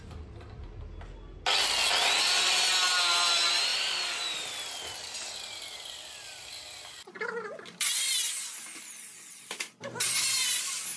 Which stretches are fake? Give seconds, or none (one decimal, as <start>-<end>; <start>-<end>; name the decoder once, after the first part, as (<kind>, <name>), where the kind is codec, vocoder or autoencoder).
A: none